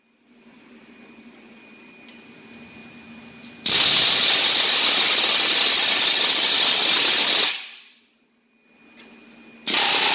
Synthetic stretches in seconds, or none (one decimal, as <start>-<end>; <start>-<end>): none